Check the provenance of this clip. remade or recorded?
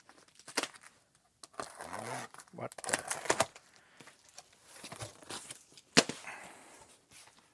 recorded